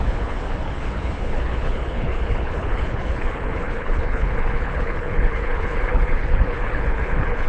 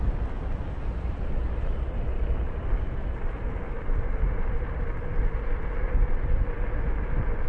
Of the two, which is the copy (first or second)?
first